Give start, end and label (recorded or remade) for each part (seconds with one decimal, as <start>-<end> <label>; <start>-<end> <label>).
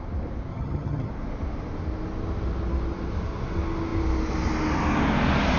0.0-0.5 recorded; 0.5-1.1 remade; 1.1-5.6 recorded